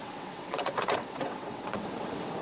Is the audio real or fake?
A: fake